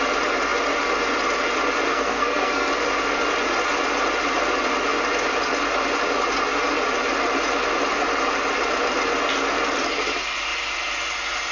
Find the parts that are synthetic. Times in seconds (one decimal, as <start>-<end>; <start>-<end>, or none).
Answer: 1.9-2.7